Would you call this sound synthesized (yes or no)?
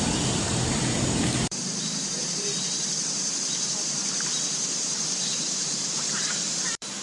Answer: yes